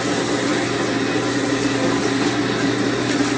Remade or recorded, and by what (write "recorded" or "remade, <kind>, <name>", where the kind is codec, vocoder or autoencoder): recorded